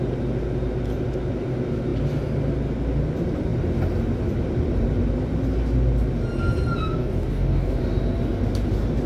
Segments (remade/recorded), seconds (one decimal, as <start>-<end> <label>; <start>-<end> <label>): 0.0-7.0 recorded; 7.0-7.8 remade; 7.8-9.1 recorded